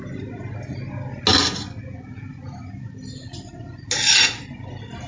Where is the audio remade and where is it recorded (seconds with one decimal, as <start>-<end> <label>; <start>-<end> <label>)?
0.0-5.1 recorded